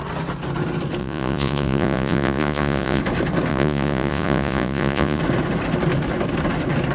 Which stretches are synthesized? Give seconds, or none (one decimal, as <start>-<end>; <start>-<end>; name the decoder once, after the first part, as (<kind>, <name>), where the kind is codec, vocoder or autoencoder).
1.0-3.0 (vocoder, Vocos); 3.5-5.2